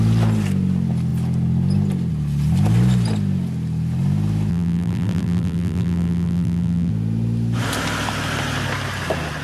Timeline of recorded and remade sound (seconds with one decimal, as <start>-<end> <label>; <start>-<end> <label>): 0.0-4.5 recorded; 4.5-6.9 remade; 6.9-9.4 recorded